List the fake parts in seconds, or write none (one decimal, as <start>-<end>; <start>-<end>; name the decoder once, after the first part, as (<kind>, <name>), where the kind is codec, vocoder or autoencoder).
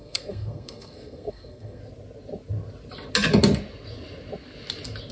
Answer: 0.0-1.8 (codec, SNAC)